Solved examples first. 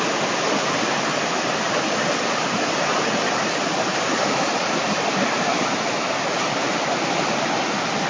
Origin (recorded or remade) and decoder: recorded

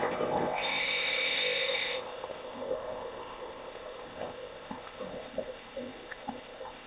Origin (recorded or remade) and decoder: remade, codec, ZipCodec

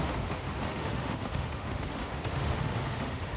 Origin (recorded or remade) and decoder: remade, autoencoder, DAC-VAE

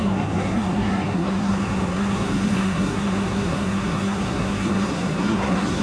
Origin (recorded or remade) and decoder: remade, codec, SNAC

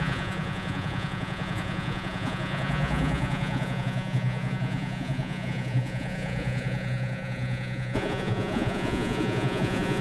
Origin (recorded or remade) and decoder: remade, vocoder, Vocos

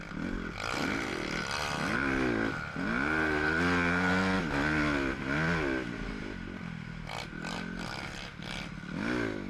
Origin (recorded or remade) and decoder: recorded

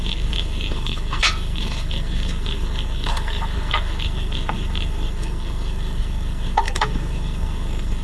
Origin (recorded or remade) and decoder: remade, codec, SNAC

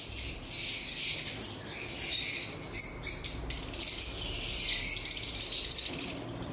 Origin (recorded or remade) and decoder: recorded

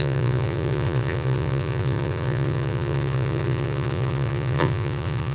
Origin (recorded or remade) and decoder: remade, vocoder, Vocos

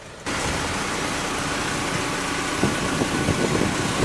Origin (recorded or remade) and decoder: recorded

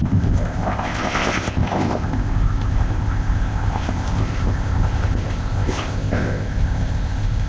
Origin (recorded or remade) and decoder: remade, codec, ZipCodec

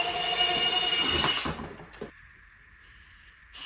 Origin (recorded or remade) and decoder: remade, vocoder, BigVGAN v2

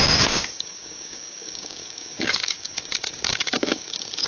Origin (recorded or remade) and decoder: remade, codec, DAC